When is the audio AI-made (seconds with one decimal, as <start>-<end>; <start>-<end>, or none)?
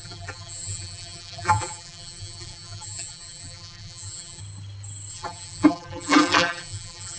0.0-4.4; 5.1-7.2